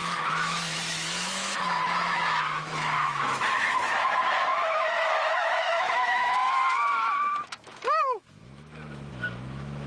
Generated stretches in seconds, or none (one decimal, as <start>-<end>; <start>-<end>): 0.0-9.9